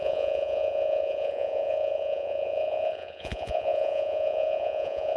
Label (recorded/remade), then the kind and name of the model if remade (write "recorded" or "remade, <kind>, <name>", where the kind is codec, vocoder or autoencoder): remade, vocoder, Vocos